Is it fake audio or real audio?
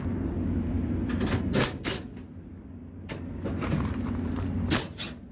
real